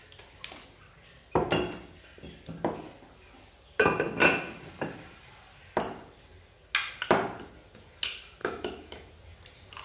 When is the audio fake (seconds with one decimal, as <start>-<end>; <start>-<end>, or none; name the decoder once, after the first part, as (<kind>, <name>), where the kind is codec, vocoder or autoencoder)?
8.4-9.1 (autoencoder, DAC-VAE)